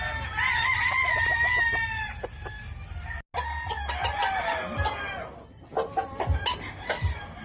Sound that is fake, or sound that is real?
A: real